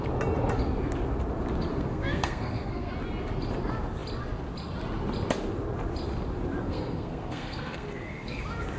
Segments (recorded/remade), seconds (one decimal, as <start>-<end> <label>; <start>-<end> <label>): 0.0-1.7 recorded; 1.7-2.9 remade; 2.9-6.6 recorded; 6.6-8.4 remade; 8.4-8.8 recorded